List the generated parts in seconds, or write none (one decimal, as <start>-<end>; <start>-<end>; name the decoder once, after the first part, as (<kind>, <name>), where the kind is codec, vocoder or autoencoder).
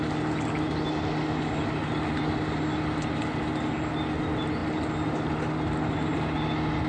none